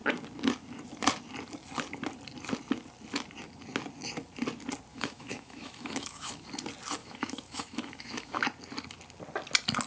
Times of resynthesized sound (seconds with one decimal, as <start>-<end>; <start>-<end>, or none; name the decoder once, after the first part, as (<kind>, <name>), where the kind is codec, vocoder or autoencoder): 4.9-6.5 (autoencoder, DAC-VAE); 7.0-8.4